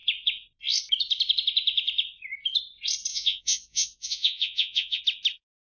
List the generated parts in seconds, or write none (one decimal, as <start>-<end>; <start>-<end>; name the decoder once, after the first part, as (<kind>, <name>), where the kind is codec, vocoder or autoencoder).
3.1-5.0 (vocoder, Vocos)